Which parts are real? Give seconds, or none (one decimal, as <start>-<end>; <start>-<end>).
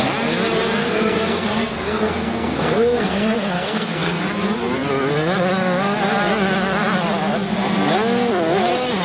0.0-0.8; 4.2-9.0